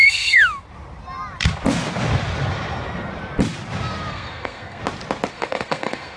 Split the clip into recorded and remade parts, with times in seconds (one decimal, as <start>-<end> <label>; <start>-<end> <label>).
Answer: 0.0-0.4 remade; 0.4-4.1 recorded; 4.1-4.8 remade; 4.8-5.3 recorded; 5.3-6.2 remade

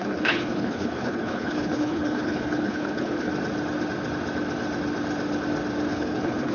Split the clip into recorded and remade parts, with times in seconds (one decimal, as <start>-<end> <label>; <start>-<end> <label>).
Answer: 0.0-3.3 remade; 3.3-5.9 recorded; 5.9-6.5 remade

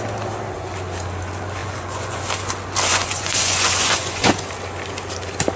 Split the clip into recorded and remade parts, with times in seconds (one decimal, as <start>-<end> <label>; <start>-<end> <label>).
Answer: 0.0-1.6 recorded; 1.6-2.2 remade; 2.2-2.9 recorded; 2.9-4.3 remade; 4.3-5.6 recorded

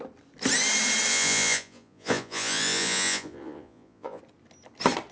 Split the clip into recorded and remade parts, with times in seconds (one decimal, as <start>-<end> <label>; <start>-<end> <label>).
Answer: 0.0-1.1 recorded; 1.1-4.2 remade; 4.2-5.1 recorded

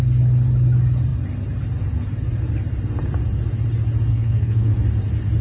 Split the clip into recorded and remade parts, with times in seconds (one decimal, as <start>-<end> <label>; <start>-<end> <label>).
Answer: 0.0-4.1 recorded; 4.1-4.7 remade; 4.7-5.4 recorded

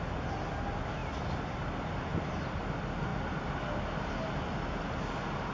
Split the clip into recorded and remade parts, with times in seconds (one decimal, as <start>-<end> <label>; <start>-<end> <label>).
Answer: 0.0-5.5 recorded

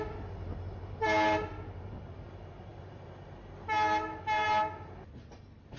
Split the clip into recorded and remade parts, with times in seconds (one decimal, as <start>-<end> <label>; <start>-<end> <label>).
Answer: 0.0-5.8 recorded